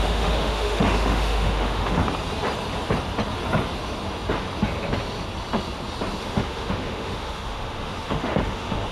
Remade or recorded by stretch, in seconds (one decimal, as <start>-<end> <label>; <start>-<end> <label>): 0.0-2.0 remade; 2.0-6.2 recorded; 6.2-8.9 remade